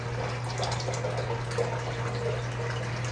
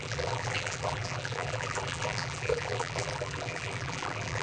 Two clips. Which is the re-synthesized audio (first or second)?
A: second